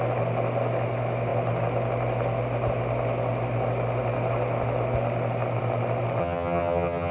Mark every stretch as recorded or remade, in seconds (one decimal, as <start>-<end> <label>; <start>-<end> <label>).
0.0-6.2 recorded; 6.2-7.1 remade